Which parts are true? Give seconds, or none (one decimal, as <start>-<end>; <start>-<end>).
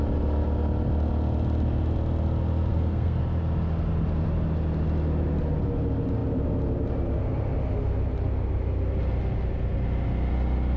0.0-2.7; 3.2-10.8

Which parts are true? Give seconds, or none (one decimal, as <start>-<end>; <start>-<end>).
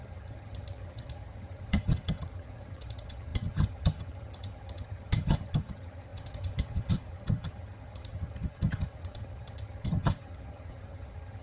none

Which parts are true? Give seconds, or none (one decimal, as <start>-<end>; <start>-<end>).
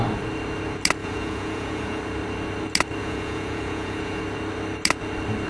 0.0-1.0; 2.0-3.0; 4.2-5.5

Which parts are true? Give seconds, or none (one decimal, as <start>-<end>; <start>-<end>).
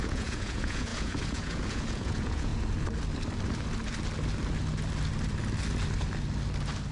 2.5-6.9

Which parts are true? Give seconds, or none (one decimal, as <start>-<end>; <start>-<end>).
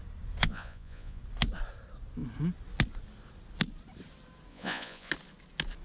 0.0-0.4; 1.2-4.5; 5.1-5.8